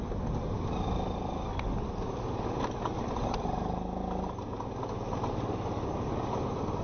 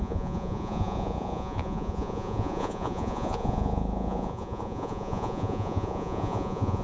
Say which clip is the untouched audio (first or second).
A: first